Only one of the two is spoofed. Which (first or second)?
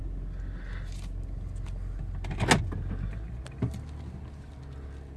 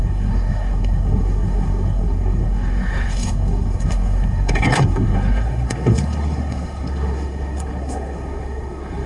second